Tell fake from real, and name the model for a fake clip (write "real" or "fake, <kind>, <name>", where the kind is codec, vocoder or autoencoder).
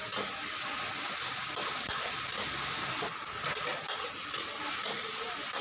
real